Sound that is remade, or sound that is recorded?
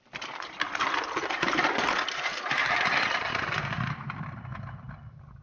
remade